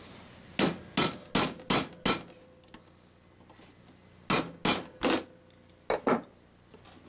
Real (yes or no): yes